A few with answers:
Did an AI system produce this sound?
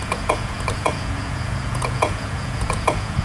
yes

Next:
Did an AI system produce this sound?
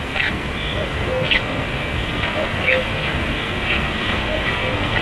yes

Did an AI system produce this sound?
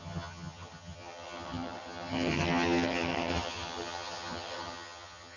yes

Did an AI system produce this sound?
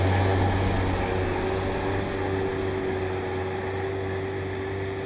no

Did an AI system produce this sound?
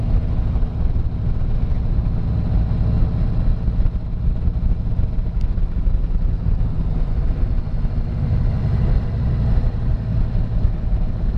no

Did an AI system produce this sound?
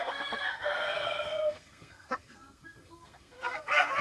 yes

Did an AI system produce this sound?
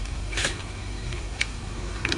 yes